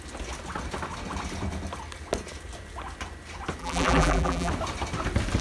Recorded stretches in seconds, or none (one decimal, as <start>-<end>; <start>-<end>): 0.0-3.6; 4.5-5.4